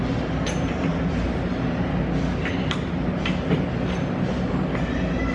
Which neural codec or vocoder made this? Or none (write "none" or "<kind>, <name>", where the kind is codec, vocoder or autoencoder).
none